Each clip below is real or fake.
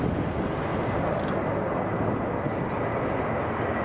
real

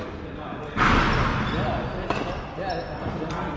real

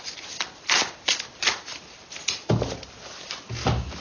real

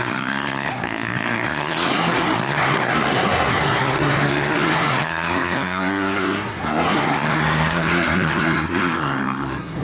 fake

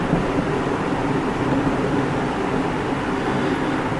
fake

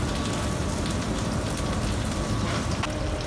real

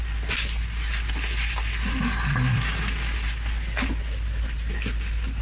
real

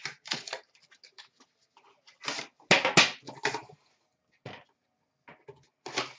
real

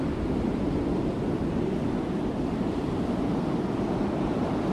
real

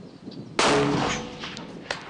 real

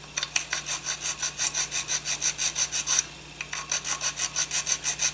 real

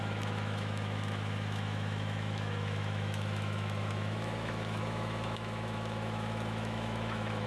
fake